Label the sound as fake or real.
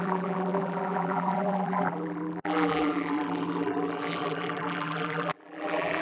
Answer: fake